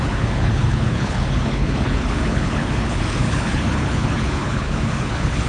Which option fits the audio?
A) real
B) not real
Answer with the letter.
B